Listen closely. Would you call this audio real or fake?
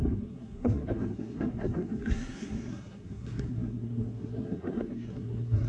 fake